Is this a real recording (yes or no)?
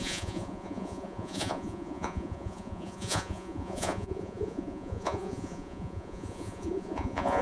no